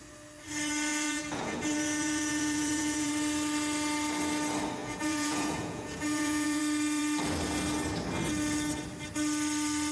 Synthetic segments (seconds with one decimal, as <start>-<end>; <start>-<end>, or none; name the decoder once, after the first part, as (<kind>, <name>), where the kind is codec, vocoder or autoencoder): 0.9-3.1 (vocoder, Vocos); 4.8-6.6